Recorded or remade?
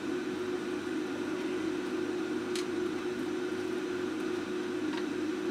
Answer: recorded